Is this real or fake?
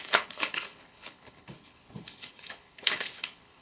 fake